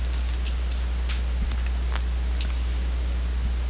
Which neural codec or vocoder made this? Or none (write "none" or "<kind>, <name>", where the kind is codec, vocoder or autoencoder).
none